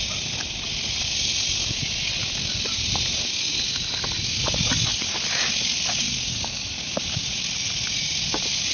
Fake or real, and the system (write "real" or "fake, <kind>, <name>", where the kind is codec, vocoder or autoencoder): real